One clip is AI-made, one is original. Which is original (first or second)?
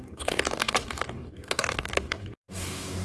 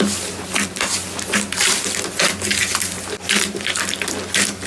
second